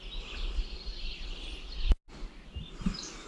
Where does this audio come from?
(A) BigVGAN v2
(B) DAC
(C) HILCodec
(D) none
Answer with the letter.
D